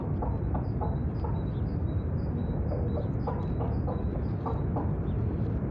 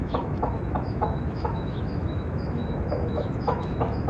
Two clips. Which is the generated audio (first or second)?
second